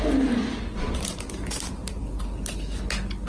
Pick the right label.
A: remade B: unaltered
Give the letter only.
B